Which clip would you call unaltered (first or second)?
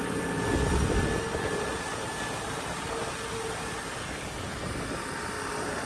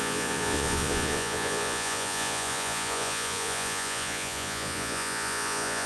first